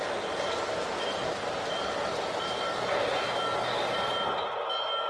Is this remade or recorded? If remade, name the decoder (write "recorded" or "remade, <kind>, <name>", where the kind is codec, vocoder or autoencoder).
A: recorded